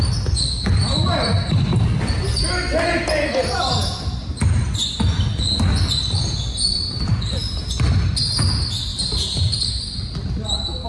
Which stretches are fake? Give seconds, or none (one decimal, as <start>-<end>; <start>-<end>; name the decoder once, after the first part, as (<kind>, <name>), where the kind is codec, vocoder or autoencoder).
6.7-7.9 (vocoder, BigVGAN v2); 8.9-9.7